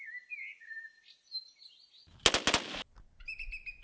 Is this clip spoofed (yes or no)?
no